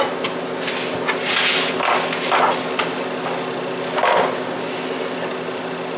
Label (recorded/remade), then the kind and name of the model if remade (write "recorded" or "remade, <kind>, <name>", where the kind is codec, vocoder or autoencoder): recorded